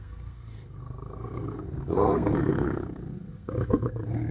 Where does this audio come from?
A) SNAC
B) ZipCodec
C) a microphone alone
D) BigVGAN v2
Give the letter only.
A